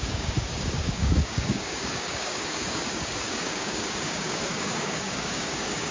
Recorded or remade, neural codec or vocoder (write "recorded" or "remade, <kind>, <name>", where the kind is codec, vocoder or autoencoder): remade, codec, DAC